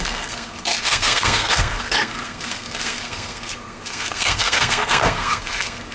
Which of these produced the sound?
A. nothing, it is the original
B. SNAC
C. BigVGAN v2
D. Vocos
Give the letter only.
B